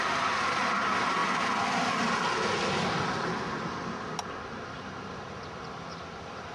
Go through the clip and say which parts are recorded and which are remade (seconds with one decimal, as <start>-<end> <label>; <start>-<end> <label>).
0.0-6.5 recorded